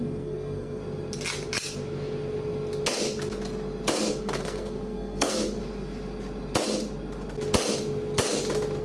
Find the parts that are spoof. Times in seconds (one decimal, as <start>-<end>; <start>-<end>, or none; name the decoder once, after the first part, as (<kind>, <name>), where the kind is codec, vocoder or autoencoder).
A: 0.0-0.8 (codec, SNAC); 4.2-5.6